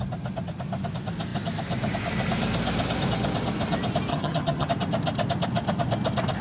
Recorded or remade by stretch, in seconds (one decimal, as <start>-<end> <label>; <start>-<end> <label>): 0.0-4.1 recorded; 4.1-4.7 remade; 4.7-6.4 recorded